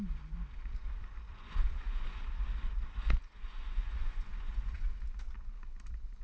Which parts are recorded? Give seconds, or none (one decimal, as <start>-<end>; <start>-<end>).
0.0-1.3; 2.2-3.2; 5.0-6.2